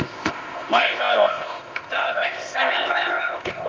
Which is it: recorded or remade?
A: remade